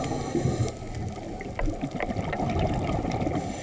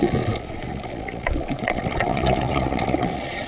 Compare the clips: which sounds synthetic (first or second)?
second